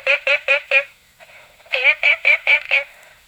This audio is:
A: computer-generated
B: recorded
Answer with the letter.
A